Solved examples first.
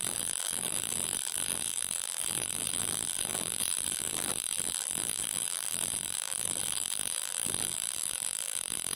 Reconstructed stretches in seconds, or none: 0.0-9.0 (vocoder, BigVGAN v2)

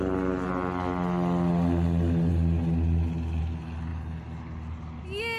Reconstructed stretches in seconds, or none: none

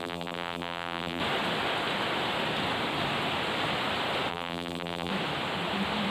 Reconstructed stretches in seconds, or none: 0.0-1.2 (vocoder, BigVGAN v2); 4.3-5.1

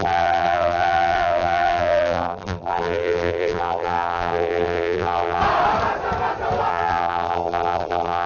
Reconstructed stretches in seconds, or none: 0.0-5.4 (vocoder, BigVGAN v2); 6.7-8.3

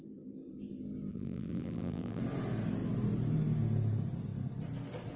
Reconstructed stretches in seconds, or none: 1.1-2.2 (vocoder, BigVGAN v2)

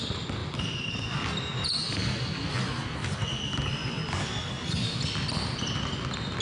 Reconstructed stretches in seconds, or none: 0.4-1.4 (vocoder, BigVGAN v2)

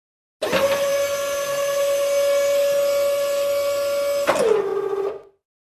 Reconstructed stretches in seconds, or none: none